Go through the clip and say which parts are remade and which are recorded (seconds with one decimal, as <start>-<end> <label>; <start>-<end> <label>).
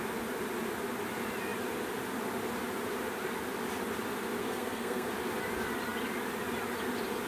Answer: 0.0-4.4 recorded; 4.4-5.1 remade; 5.1-7.3 recorded